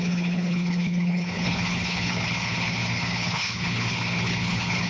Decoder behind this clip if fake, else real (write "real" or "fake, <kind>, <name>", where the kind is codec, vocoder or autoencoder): fake, codec, HILCodec